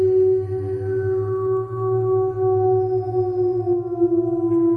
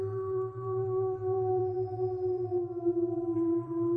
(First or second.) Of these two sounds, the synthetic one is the second